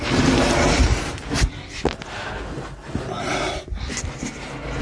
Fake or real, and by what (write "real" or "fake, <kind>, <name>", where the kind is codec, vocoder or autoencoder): real